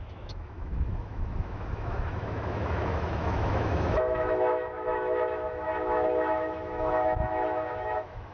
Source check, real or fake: fake